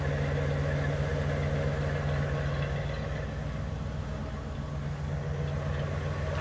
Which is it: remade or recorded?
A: recorded